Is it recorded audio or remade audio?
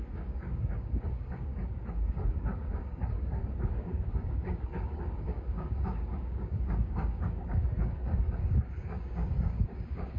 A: remade